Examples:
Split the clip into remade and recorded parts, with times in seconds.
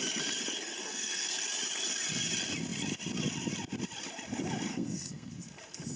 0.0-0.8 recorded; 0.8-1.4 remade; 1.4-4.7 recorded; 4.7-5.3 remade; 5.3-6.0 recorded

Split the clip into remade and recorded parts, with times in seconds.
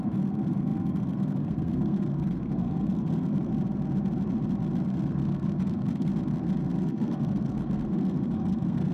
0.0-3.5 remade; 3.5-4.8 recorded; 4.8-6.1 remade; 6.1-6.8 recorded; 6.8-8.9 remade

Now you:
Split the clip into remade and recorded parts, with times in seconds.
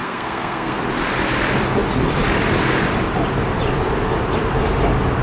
0.0-0.8 remade; 0.8-5.2 recorded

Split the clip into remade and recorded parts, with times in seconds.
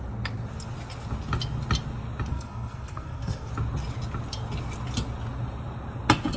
0.0-2.3 recorded; 2.3-3.5 remade; 3.5-6.4 recorded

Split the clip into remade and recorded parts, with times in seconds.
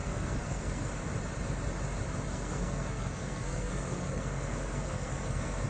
0.0-1.0 remade; 1.0-2.3 recorded; 2.3-5.7 remade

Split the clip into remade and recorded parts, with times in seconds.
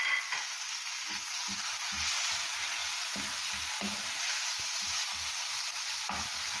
0.0-6.6 recorded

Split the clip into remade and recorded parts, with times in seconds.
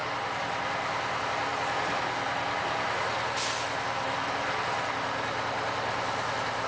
0.0-6.7 recorded